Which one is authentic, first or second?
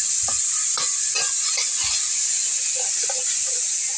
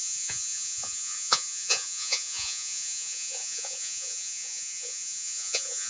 first